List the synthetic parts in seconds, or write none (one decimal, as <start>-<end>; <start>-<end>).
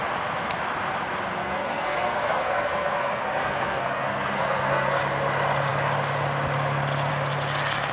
1.4-5.0